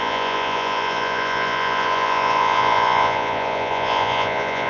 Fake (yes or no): yes